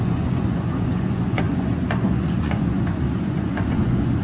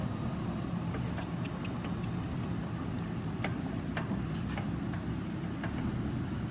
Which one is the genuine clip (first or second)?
second